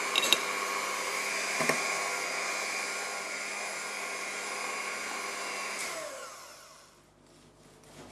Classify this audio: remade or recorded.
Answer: recorded